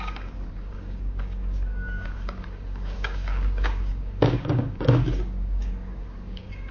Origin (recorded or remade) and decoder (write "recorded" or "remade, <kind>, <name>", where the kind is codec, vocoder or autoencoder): remade, codec, DAC